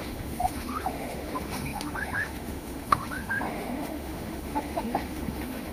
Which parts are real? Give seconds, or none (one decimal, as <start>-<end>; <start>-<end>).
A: none